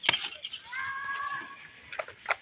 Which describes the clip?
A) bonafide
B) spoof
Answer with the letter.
A